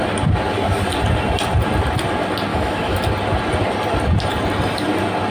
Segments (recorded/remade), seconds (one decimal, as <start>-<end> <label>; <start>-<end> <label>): 0.0-2.5 recorded; 2.5-3.0 remade; 3.0-5.3 recorded